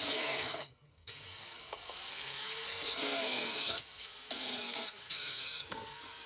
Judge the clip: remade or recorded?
remade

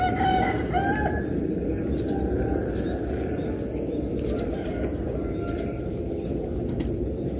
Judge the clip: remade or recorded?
recorded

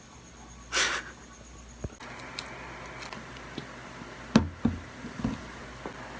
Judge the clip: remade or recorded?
recorded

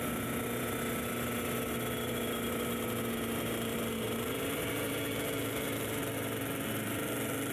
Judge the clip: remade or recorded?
recorded